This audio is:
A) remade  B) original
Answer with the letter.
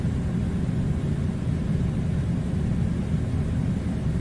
B